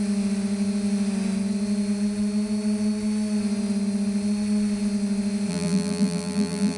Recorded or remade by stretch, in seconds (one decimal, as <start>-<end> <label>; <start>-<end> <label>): 0.0-5.5 recorded; 5.5-6.8 remade